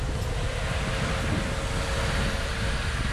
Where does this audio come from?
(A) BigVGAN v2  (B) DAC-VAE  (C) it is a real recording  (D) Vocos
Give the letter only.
C